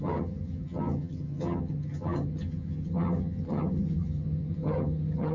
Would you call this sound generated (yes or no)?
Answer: yes